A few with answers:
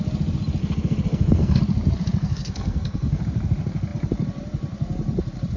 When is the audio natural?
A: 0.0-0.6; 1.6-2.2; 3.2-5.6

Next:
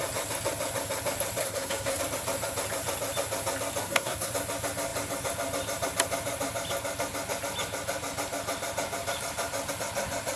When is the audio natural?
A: 0.0-1.4; 2.0-3.8; 4.3-10.4

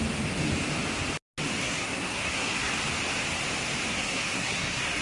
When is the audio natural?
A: 0.0-1.6; 2.7-3.9

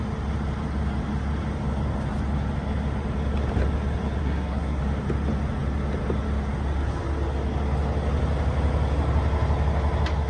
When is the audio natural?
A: 0.0-4.2; 4.8-10.3

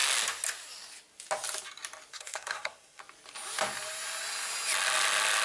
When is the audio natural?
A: 0.0-2.1; 3.0-5.4

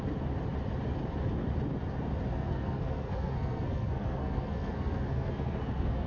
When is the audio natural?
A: 0.0-2.3

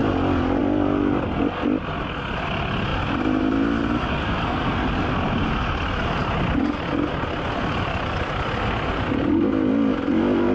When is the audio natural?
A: 0.0-4.4; 4.9-10.5

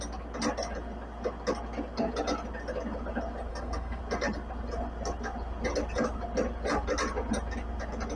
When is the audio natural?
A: 0.0-3.5; 4.0-8.2